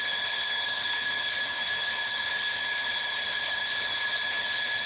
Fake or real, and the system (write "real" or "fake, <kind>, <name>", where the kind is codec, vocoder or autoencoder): fake, codec, HILCodec